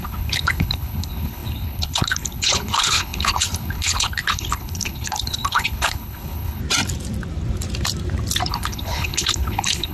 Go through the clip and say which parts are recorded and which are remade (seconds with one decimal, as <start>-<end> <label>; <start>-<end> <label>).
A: 0.0-6.6 remade; 6.6-8.5 recorded; 8.5-9.9 remade